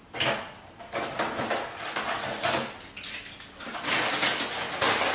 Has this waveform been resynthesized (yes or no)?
no